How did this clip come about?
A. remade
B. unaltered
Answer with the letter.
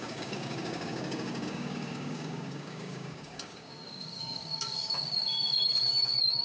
A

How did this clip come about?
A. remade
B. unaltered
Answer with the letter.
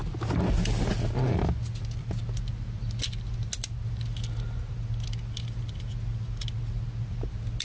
B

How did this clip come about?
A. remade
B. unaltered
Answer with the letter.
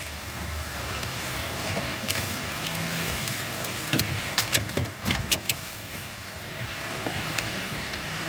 A